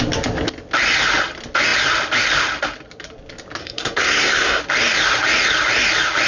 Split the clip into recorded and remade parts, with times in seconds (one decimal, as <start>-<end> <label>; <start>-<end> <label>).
0.0-3.6 recorded; 3.6-4.6 remade; 4.6-6.3 recorded